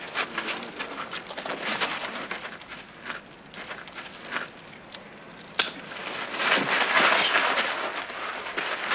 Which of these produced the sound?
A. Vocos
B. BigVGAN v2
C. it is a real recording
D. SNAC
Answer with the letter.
C